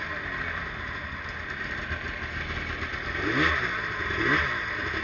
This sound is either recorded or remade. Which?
recorded